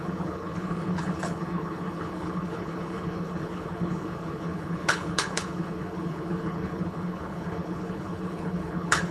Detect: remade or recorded remade